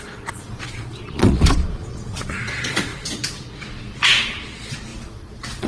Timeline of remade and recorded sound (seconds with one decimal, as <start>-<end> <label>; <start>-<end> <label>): 0.0-5.7 remade